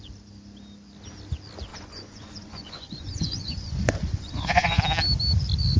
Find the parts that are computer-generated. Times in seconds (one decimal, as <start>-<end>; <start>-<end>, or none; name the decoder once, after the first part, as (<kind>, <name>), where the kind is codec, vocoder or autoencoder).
1.7-4.8 (vocoder, Vocos)